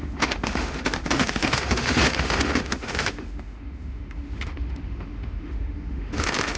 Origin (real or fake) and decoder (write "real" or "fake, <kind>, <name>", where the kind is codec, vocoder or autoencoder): fake, autoencoder, DAC-VAE